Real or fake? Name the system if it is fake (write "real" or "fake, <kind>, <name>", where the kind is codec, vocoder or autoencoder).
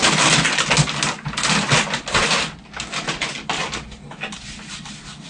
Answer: real